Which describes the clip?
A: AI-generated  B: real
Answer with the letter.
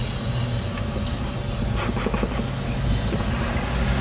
B